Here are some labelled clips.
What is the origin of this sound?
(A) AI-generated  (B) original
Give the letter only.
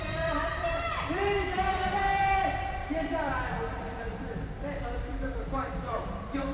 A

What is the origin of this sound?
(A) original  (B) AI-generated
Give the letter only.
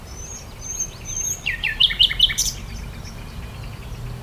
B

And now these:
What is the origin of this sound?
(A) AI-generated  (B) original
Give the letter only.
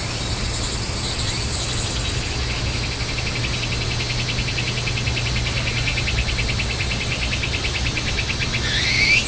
B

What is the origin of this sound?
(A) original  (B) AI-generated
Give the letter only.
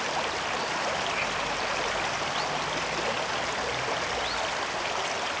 A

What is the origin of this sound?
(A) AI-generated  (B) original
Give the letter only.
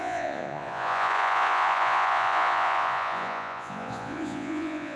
A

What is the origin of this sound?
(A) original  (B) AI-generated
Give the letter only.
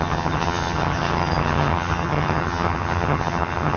B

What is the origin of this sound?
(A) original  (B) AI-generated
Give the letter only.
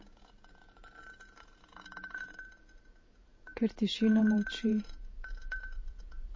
B